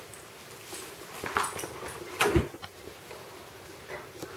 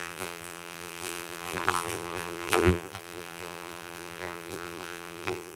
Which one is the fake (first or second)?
second